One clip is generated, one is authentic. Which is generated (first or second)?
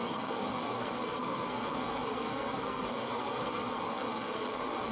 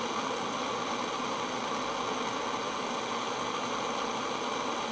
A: first